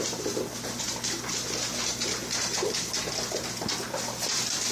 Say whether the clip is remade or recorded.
recorded